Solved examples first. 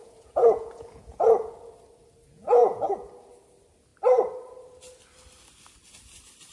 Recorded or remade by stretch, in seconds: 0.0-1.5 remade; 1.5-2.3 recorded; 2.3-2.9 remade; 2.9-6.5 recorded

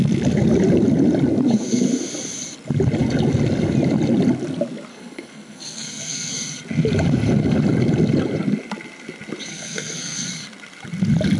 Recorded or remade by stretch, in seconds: 0.0-4.9 recorded; 4.9-6.3 remade; 6.3-9.5 recorded; 9.5-10.3 remade; 10.3-11.4 recorded

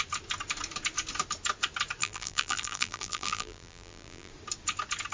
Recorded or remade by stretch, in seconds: 0.0-2.0 recorded; 2.0-4.3 remade; 4.3-5.1 recorded

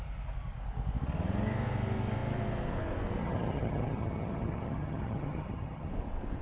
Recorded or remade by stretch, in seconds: 0.0-3.2 recorded; 3.2-5.9 remade; 5.9-6.4 recorded

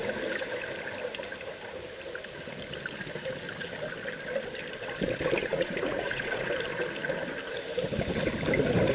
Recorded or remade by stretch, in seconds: 0.0-5.4 recorded; 5.4-6.5 remade; 6.5-8.9 recorded